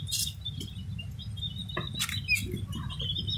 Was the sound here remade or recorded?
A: recorded